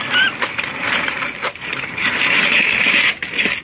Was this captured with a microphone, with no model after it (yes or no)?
no